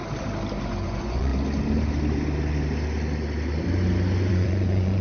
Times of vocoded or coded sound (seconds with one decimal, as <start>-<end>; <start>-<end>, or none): 0.6-1.3; 4.3-5.0